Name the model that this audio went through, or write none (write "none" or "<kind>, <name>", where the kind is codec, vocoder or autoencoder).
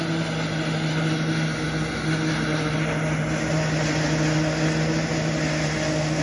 none